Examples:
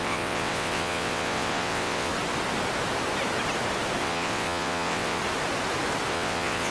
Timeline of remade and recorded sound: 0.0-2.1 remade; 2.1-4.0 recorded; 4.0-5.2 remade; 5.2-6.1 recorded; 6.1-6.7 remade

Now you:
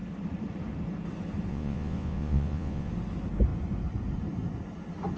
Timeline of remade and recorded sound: 0.0-1.5 recorded; 1.5-2.9 remade; 2.9-5.2 recorded

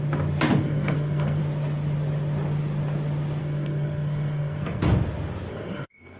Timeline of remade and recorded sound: 0.0-0.6 recorded; 0.6-1.4 remade; 1.4-3.4 recorded; 3.4-4.9 remade; 4.9-5.5 recorded; 5.5-6.2 remade

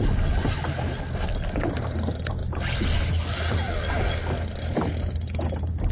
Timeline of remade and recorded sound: 0.0-5.9 recorded

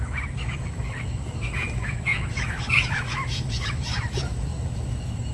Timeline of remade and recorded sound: 0.0-5.3 remade

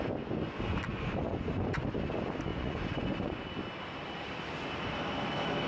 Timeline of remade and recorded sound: 0.0-0.9 recorded; 0.9-1.9 remade; 1.9-2.5 recorded; 2.5-3.4 remade; 3.4-5.7 recorded